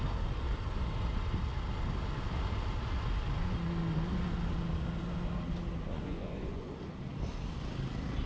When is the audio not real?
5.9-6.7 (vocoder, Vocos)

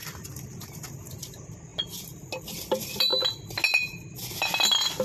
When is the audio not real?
0.0-1.7 (vocoder, BigVGAN v2); 2.7-3.1; 4.3-5.0

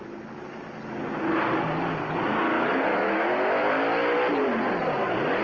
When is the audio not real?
2.9-3.7 (autoencoder, DAC-VAE)

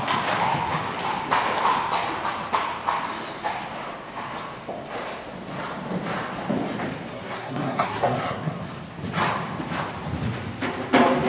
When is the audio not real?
7.1-8.6 (codec, SNAC)

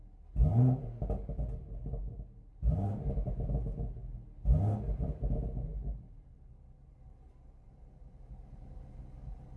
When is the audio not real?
2.0-3.0 (vocoder, BigVGAN v2); 5.7-8.9

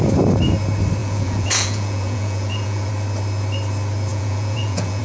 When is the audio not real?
1.0-2.9 (vocoder, Vocos); 4.1-5.0